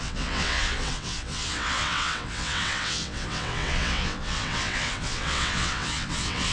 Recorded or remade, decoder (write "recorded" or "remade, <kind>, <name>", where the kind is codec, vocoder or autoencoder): remade, vocoder, WaveNeXt